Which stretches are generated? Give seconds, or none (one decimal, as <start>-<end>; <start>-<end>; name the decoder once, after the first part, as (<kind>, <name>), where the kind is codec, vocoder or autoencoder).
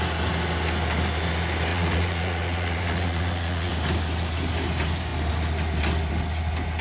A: 1.7-3.7 (vocoder, Vocos)